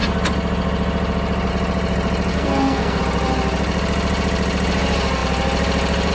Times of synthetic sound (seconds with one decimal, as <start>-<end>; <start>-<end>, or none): 2.3-3.0